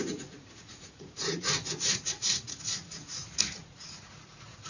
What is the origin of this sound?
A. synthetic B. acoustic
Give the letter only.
A